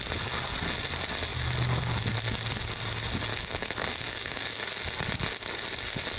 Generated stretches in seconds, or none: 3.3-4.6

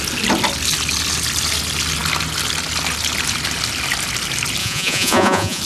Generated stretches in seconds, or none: 4.6-5.6

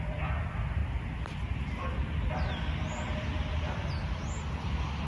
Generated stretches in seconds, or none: 0.8-2.3; 3.1-4.5

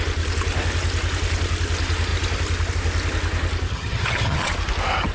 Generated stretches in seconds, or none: 3.7-4.5

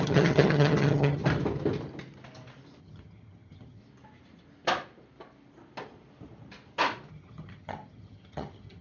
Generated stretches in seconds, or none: 0.0-1.2; 2.8-3.8; 7.1-8.8